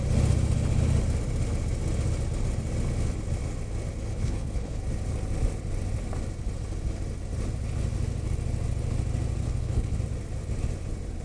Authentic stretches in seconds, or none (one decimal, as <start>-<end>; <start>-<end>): 0.0-4.1; 4.8-9.4; 10.0-11.2